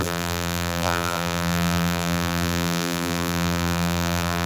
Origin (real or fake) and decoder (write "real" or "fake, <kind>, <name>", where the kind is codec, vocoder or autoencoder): fake, vocoder, BigVGAN v2